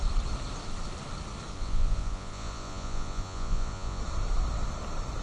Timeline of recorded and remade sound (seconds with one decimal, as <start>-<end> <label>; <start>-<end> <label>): 0.0-1.5 recorded; 1.5-4.0 remade; 4.0-5.2 recorded